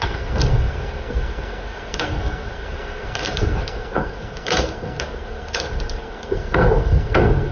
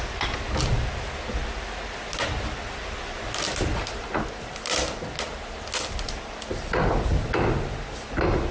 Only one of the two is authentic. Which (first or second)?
second